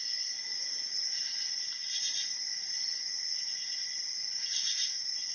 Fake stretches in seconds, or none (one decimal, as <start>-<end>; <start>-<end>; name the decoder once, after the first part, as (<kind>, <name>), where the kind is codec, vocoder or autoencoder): none